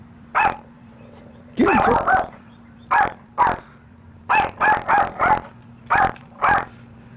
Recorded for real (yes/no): no